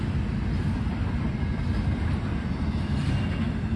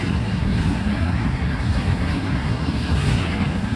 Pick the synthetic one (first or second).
second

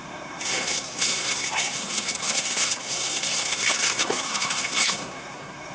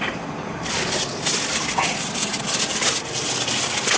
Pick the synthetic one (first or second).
first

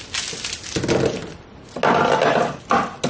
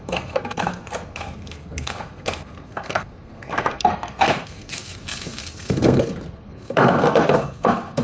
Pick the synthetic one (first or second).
second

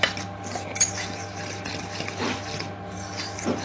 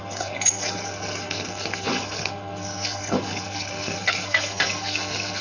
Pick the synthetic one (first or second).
second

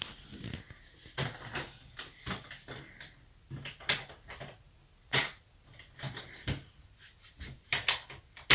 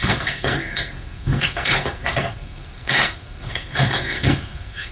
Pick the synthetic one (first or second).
second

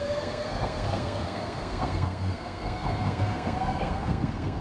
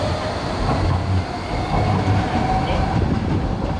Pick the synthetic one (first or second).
first